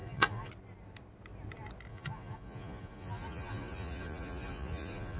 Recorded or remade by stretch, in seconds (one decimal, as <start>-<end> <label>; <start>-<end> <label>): 0.0-0.5 remade; 0.5-1.9 recorded; 1.9-5.2 remade